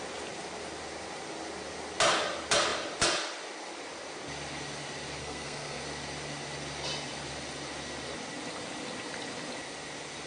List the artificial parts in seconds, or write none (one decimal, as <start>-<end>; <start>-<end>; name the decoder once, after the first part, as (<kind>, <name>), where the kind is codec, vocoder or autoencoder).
5.2-5.8 (codec, SNAC)